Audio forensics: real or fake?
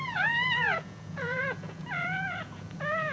fake